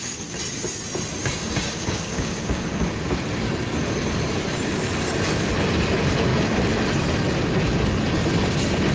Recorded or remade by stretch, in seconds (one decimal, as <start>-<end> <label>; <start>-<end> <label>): 0.0-1.2 recorded; 1.2-3.2 remade; 3.2-8.9 recorded